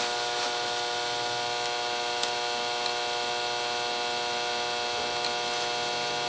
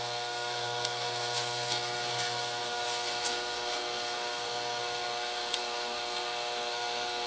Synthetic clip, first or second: second